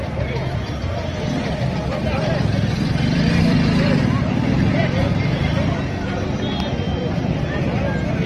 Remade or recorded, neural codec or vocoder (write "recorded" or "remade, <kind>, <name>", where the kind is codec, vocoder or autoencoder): recorded